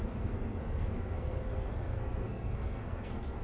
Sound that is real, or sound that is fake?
fake